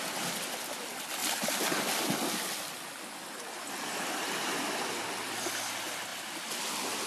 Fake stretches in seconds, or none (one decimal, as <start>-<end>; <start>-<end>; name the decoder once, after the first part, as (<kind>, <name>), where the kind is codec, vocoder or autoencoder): 6.1-7.1 (vocoder, BigVGAN v2)